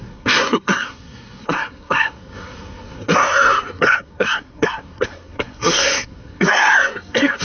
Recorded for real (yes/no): no